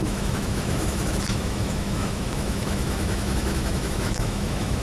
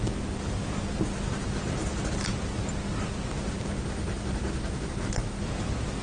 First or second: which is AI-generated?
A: first